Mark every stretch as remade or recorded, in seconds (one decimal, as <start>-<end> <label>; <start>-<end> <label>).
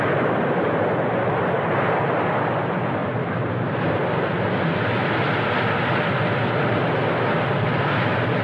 0.0-8.4 recorded